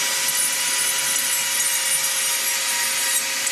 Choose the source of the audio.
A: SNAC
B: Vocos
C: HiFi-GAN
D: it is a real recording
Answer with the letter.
D